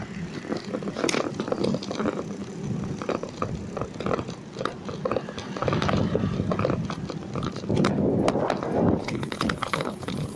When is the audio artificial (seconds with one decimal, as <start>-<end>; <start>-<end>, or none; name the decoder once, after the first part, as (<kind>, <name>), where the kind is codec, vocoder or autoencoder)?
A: 9.0-10.4 (codec, HILCodec)